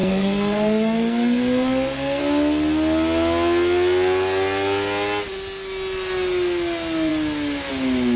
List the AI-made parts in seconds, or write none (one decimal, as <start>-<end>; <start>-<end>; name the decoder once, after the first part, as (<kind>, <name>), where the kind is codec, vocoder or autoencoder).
0.0-2.2 (codec, SNAC)